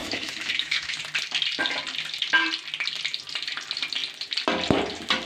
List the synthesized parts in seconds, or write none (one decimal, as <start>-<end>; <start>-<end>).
0.0-1.0